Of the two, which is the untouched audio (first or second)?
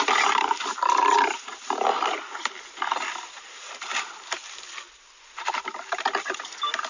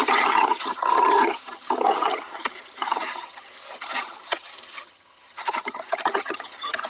first